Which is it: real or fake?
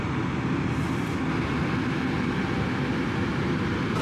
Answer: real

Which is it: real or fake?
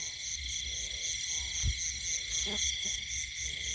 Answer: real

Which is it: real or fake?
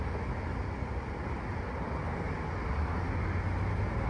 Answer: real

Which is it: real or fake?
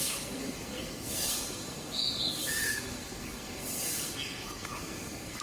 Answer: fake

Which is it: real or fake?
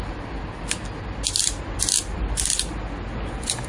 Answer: real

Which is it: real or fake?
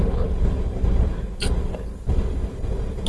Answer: real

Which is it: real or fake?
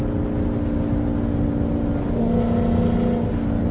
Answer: real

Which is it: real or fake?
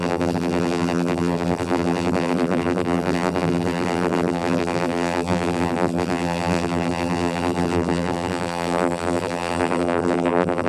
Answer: fake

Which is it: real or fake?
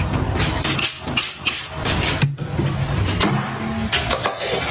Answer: real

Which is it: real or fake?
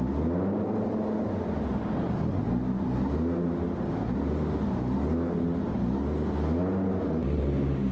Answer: real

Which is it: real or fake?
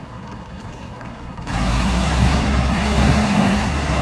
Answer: fake